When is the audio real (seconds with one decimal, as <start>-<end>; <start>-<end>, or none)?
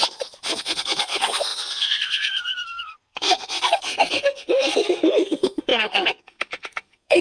none